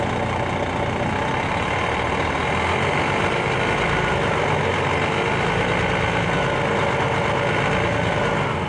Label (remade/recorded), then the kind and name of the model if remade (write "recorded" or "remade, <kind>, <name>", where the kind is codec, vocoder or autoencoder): recorded